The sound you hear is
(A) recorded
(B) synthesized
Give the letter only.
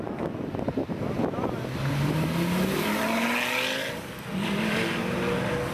A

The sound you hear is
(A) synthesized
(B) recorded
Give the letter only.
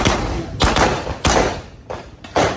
B